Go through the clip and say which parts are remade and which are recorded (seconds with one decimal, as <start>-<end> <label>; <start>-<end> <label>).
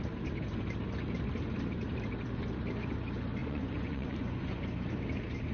0.0-3.4 recorded; 3.4-4.6 remade; 4.6-5.5 recorded